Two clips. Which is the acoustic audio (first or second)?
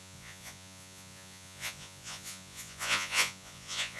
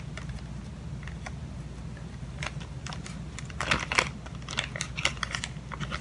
second